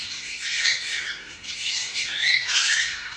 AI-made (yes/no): yes